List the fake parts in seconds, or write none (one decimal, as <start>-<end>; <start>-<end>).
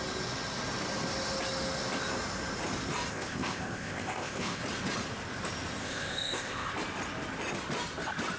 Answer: 3.1-4.6; 5.8-6.7